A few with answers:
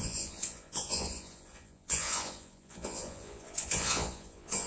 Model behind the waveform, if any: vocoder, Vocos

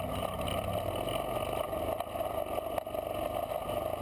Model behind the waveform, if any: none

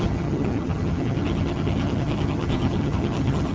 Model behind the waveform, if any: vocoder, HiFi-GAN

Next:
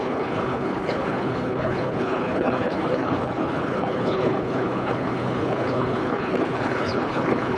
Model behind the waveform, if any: codec, HILCodec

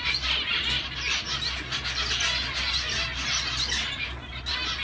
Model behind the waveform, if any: none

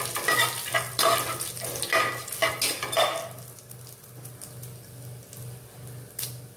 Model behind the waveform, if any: none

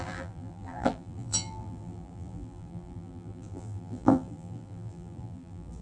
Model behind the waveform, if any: vocoder, BigVGAN v2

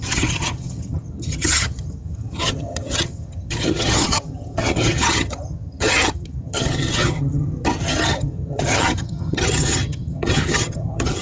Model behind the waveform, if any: vocoder, HiFi-GAN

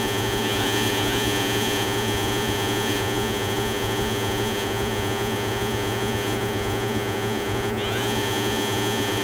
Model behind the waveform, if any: vocoder, Vocos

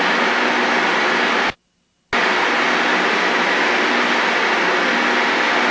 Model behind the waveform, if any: none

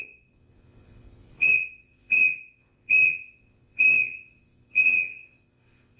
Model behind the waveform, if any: vocoder, Vocos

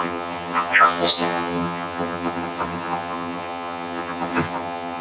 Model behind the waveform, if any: vocoder, HiFi-GAN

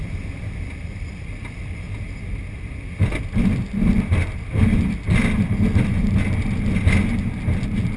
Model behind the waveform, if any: none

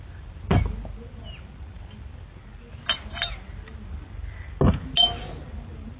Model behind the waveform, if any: none